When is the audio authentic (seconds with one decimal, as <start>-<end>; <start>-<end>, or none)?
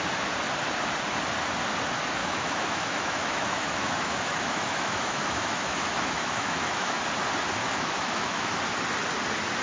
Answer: 0.0-2.2; 7.0-7.6; 8.6-9.6